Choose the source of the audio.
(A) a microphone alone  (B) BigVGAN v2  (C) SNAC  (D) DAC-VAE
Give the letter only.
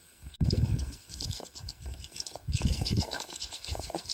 C